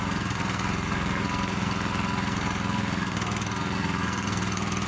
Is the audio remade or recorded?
remade